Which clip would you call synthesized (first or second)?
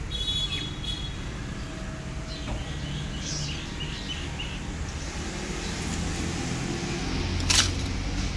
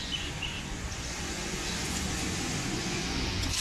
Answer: second